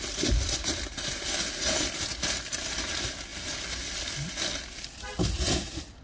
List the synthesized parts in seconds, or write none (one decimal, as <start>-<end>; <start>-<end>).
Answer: none